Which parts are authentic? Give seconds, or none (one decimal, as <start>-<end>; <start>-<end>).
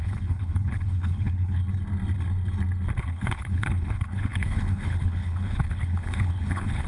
1.6-3.0